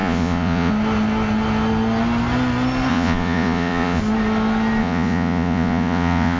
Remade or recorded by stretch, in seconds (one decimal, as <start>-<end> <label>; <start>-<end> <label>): 0.0-0.7 remade; 0.7-2.9 recorded; 2.9-4.0 remade; 4.0-4.8 recorded; 4.8-6.4 remade